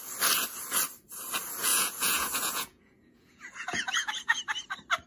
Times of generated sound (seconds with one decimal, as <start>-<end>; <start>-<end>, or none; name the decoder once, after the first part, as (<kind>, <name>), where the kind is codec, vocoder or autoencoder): 1.7-4.4 (vocoder, Vocos)